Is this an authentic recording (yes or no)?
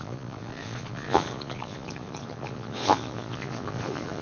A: no